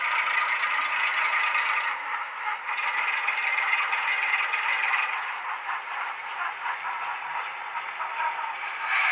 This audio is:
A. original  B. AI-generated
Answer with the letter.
B